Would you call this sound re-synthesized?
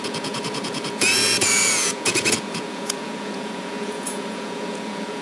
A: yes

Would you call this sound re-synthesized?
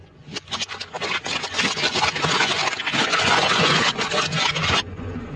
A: yes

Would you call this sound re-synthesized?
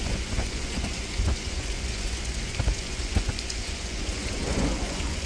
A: yes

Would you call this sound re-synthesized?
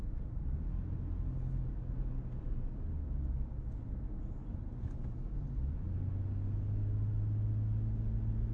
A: no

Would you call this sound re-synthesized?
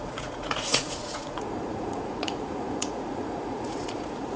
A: yes